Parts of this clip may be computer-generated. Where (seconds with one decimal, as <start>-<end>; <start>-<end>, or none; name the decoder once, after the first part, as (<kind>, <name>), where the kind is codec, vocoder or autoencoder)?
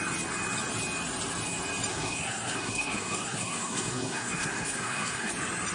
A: 1.9-5.3 (codec, SNAC)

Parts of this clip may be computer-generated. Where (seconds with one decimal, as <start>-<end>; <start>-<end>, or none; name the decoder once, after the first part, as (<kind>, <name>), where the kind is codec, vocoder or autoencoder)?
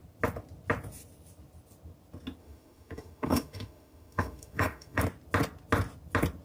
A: 2.4-5.0 (autoencoder, DAC-VAE)